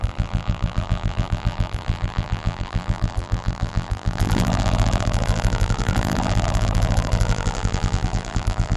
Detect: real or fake fake